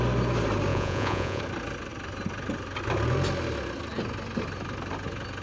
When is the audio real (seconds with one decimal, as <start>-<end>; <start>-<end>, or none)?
0.0-0.7; 1.4-5.4